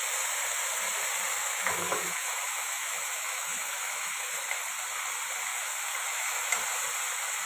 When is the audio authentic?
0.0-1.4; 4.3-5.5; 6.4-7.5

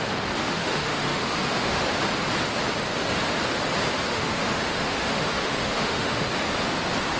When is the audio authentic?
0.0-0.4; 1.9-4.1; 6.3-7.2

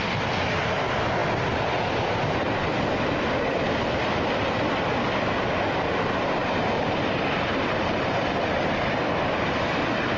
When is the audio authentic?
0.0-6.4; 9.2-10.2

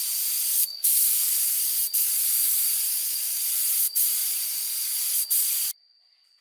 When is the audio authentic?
0.0-0.5; 1.4-6.4

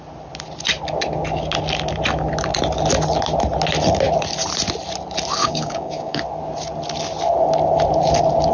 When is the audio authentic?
0.0-5.4; 6.2-8.5

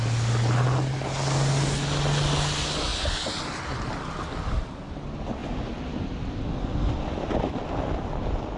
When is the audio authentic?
0.0-8.6